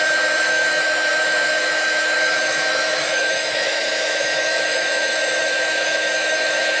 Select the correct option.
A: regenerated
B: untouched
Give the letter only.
A